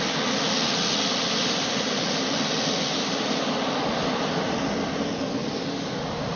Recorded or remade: recorded